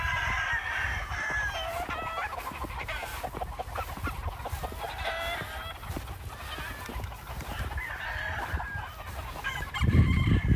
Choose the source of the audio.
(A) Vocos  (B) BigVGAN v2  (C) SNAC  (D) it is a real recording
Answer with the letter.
D